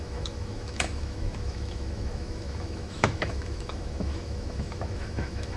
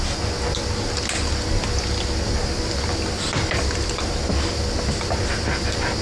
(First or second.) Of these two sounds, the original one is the second